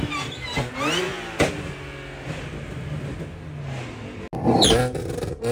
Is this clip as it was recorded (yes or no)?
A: yes